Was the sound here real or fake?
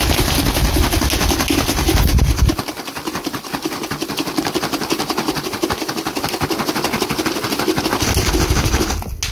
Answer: real